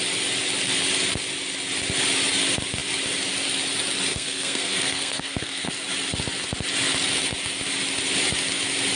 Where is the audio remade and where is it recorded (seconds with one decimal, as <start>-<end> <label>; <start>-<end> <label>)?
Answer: 0.0-4.1 recorded; 4.1-5.7 remade; 5.7-9.0 recorded